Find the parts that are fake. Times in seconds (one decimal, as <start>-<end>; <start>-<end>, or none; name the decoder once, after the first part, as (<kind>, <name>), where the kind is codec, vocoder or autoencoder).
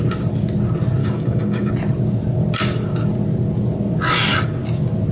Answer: 1.0-1.7 (codec, DAC)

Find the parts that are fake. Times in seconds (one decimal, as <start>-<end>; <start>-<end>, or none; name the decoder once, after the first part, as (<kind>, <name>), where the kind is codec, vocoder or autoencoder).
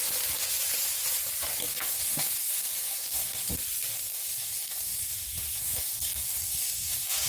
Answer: 1.7-3.5 (codec, DAC); 3.9-7.3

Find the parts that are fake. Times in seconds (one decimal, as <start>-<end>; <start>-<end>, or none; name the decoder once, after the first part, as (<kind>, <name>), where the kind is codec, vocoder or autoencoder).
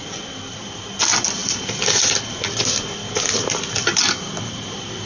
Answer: none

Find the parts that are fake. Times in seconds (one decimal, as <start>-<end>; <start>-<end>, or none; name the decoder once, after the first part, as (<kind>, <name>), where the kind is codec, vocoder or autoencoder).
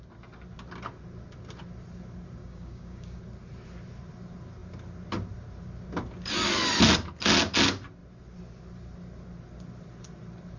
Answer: 2.4-3.2 (codec, DAC)